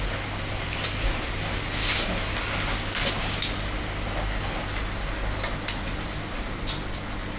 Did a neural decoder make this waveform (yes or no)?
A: no